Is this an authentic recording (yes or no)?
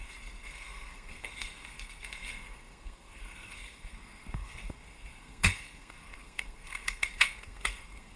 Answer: no